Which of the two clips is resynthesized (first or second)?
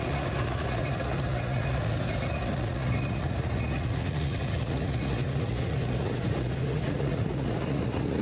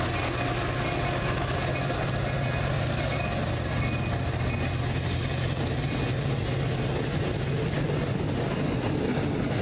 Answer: first